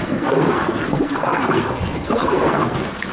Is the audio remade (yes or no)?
yes